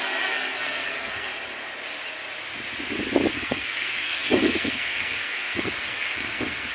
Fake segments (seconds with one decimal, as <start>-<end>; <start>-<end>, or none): 0.0-1.3; 3.3-6.7